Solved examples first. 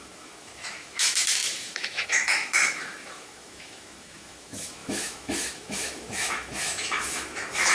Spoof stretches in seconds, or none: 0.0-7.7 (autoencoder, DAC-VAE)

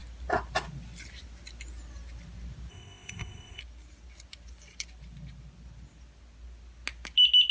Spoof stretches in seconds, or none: 2.7-3.6 (codec, ZipCodec)

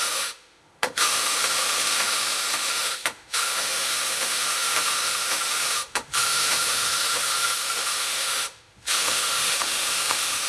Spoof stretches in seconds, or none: 0.0-10.5 (autoencoder, DAC-VAE)

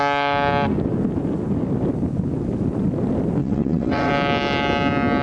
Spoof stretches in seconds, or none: 3.4-4.1 (vocoder, WaveNeXt)

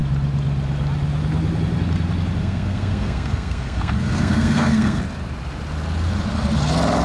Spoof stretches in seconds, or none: 2.4-5.0 (codec, SNAC)

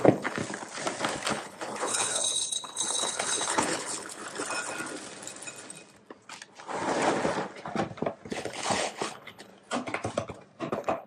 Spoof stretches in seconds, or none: 0.0-0.4 (codec, HILCodec); 1.3-4.2; 8.3-9.5; 10.7-11.1

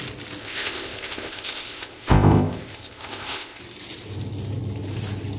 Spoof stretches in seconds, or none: 0.4-3.6 (codec, ZipCodec)

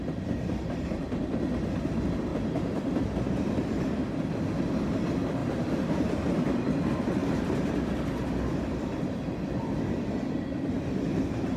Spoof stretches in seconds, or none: 2.3-4.4 (vocoder, BigVGAN v2); 5.4-6.2; 7.2-7.7